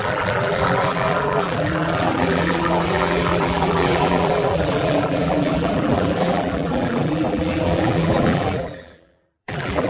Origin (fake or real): fake